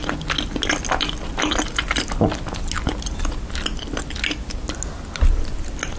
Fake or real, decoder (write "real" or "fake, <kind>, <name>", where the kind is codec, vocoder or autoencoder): real